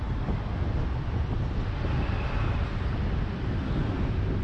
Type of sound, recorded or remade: recorded